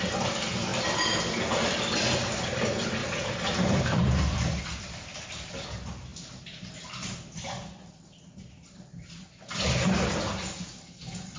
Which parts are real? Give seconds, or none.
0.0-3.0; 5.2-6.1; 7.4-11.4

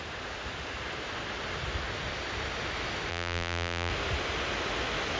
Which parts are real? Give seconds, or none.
0.0-3.1; 3.9-5.2

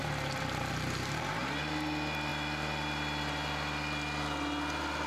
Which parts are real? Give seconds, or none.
0.0-5.1

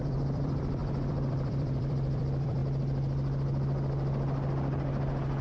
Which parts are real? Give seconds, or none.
2.6-5.4

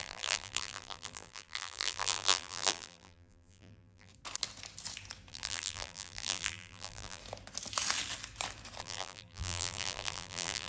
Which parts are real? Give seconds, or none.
4.1-5.3; 7.2-8.8

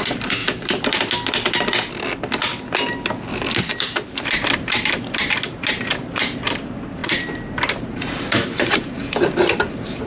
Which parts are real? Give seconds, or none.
0.4-3.6

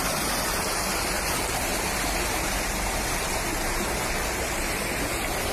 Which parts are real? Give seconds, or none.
0.0-5.5